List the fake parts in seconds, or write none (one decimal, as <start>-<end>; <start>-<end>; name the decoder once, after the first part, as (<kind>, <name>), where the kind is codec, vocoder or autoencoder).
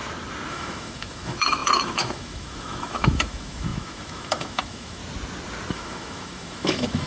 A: 0.5-5.0 (autoencoder, DAC-VAE); 5.7-7.1